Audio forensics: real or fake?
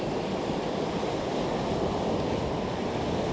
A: real